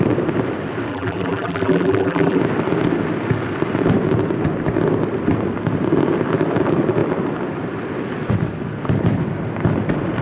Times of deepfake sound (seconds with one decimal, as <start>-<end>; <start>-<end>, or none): 0.9-2.4